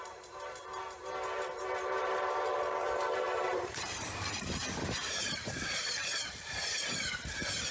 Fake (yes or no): yes